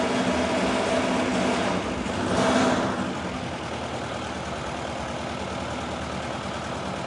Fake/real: real